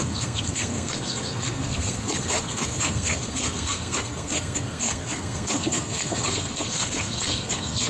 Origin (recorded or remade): remade